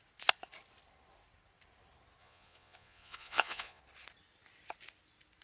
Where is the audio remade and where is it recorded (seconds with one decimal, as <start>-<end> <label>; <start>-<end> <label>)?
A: 0.0-2.2 recorded; 2.2-3.8 remade; 3.8-5.4 recorded